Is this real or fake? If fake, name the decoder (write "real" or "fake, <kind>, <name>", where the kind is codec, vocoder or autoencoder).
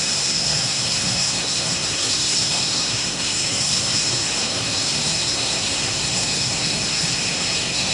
fake, codec, SNAC